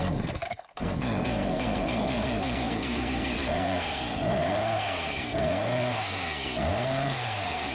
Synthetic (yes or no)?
yes